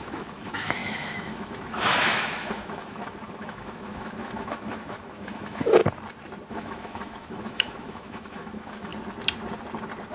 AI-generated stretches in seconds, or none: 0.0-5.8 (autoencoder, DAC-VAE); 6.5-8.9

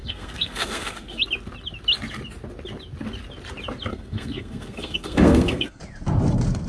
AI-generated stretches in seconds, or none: 0.0-1.2 (codec, SNAC); 3.9-5.8

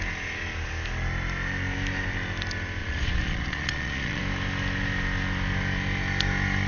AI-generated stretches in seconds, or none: 2.8-4.2 (vocoder, Vocos)

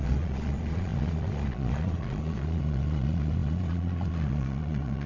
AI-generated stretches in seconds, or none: 0.0-5.1 (vocoder, Vocos)

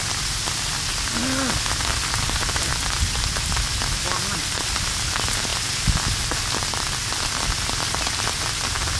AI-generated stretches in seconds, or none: none

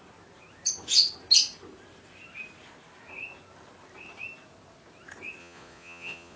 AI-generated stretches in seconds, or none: 5.4-6.4 (vocoder, Vocos)